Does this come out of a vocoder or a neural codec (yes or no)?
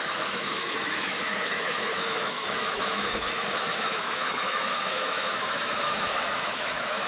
yes